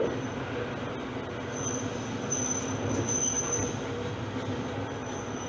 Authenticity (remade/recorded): recorded